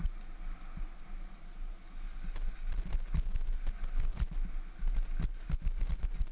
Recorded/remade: recorded